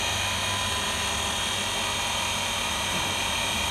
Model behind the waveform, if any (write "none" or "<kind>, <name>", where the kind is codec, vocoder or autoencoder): none